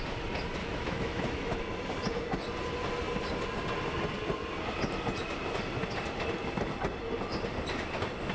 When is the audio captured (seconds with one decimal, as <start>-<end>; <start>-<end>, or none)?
0.0-0.6; 1.6-8.3